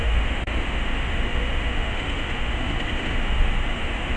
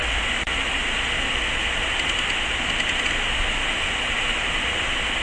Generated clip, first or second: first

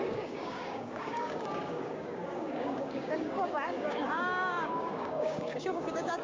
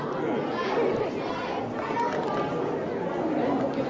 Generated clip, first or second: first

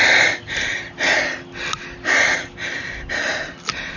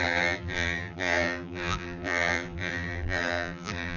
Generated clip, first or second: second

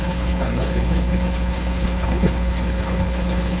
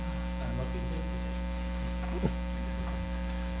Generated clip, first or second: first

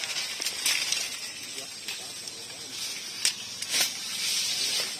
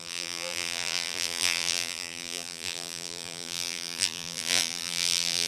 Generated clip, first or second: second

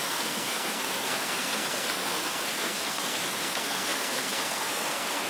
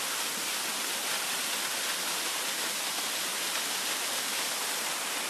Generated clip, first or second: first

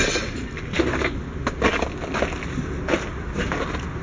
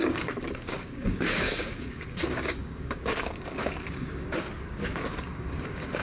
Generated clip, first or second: second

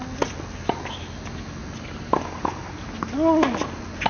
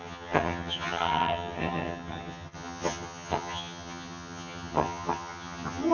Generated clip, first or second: second